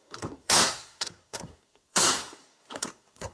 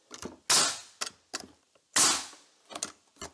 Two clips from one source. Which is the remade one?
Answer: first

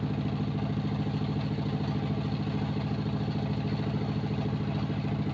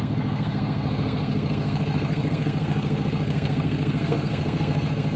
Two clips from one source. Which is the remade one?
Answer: second